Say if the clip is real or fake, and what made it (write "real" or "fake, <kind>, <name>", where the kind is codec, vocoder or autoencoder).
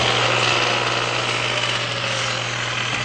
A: real